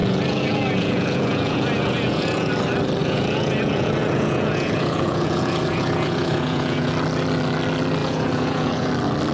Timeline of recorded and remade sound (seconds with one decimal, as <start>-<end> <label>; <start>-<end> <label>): 0.0-2.5 remade; 2.5-3.0 recorded; 3.0-6.9 remade; 6.9-8.0 recorded; 8.0-8.9 remade; 8.9-9.3 recorded